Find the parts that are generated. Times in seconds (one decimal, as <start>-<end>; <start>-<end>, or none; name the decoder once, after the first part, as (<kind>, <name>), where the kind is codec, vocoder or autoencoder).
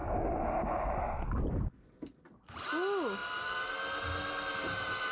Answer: none